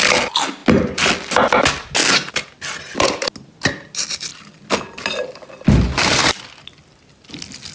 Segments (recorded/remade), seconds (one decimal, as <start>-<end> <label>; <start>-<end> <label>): 0.0-7.7 recorded